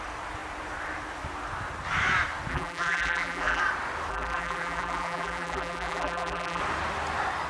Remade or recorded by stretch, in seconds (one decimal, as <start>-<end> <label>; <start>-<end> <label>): 0.0-2.5 recorded; 2.5-3.6 remade; 3.6-4.1 recorded; 4.1-6.6 remade; 6.6-7.5 recorded